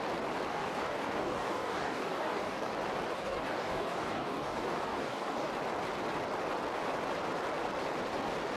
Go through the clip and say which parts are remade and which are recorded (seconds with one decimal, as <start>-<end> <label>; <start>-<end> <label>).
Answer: 0.0-0.5 recorded; 0.5-2.7 remade; 2.7-3.1 recorded; 3.1-5.5 remade; 5.5-8.6 recorded